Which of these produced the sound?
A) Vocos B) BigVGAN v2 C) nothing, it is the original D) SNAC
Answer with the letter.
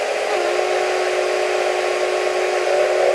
C